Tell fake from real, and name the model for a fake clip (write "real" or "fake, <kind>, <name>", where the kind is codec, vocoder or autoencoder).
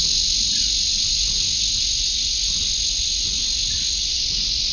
real